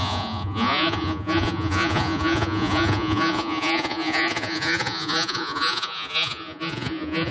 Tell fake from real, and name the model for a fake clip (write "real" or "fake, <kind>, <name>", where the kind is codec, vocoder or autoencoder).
fake, vocoder, Vocos